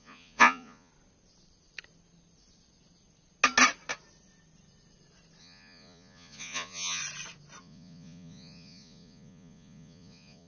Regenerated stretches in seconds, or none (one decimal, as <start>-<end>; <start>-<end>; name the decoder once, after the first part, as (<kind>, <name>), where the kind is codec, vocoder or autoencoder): 0.0-0.9 (vocoder, Vocos); 5.4-7.0; 7.6-10.5